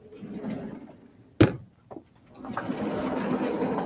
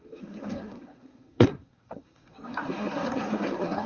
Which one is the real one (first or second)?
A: first